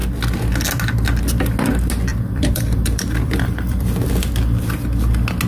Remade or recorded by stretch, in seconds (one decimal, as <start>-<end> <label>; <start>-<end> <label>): 0.0-2.1 recorded; 2.1-4.1 remade; 4.1-5.5 recorded